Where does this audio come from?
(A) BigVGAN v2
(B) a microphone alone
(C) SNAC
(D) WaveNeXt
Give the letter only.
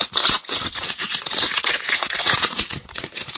D